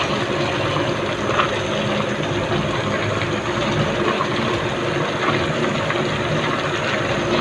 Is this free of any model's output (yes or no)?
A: yes